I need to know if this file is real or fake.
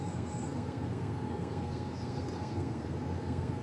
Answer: fake